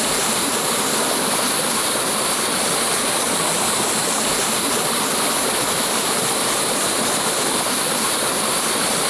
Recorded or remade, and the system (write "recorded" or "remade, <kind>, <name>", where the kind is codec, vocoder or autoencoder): recorded